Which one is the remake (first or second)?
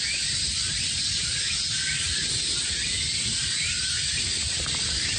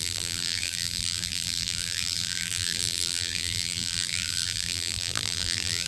second